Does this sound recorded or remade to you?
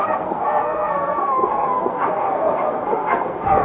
remade